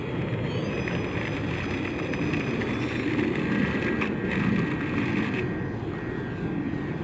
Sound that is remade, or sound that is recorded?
recorded